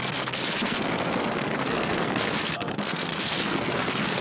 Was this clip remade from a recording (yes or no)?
yes